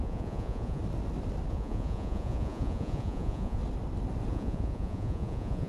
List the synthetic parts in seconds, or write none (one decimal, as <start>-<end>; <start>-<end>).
0.0-0.8; 1.5-3.6; 4.3-5.7